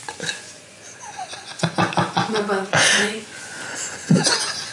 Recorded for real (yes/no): no